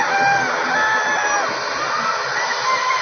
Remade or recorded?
recorded